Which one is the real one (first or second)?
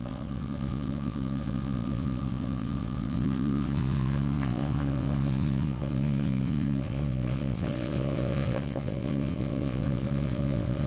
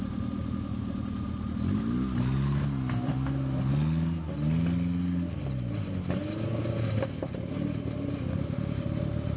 second